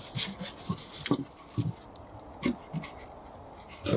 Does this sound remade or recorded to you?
recorded